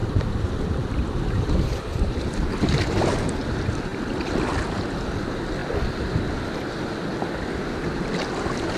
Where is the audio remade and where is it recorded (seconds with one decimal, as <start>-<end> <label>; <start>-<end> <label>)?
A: 0.0-2.0 remade; 2.0-8.8 recorded